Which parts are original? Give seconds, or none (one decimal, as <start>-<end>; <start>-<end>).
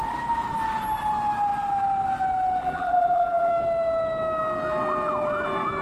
0.0-2.6; 3.5-5.8